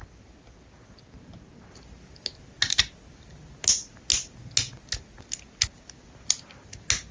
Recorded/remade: recorded